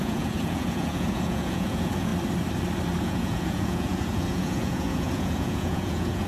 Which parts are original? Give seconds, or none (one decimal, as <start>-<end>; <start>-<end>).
2.1-3.0

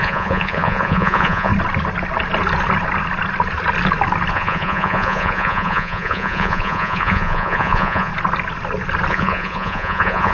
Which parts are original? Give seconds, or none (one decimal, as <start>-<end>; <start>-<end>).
1.5-4.3; 8.1-9.1

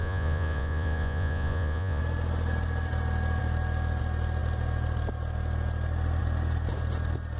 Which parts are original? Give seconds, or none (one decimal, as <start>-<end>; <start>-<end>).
2.0-7.4

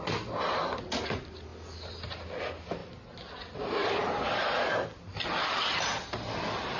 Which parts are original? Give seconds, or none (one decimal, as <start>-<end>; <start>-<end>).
0.0-6.8

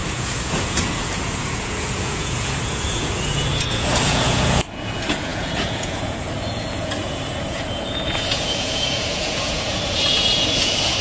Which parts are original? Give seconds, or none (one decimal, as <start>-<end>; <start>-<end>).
none